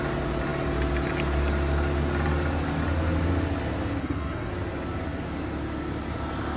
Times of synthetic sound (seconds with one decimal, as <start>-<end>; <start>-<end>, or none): 4.0-4.5

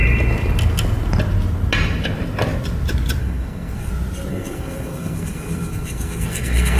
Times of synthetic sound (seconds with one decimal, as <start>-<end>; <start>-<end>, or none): 3.2-3.9; 4.3-6.8

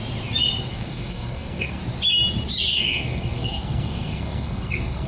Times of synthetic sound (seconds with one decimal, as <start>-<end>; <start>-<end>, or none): 0.7-1.8; 2.7-5.1

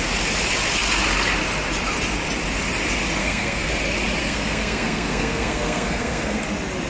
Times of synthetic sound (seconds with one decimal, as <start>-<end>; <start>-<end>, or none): 3.2-3.7; 4.2-6.4

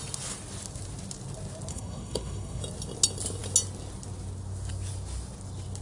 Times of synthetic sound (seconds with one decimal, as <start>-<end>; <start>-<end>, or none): 1.7-2.6